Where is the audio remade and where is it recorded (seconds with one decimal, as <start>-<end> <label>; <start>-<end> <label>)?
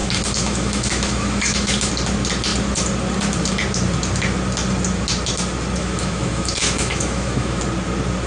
0.0-1.9 remade; 1.9-5.8 recorded; 5.8-7.6 remade; 7.6-8.3 recorded